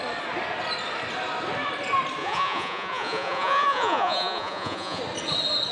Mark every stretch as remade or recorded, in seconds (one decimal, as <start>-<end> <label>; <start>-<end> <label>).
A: 0.0-2.2 recorded; 2.2-5.0 remade; 5.0-5.7 recorded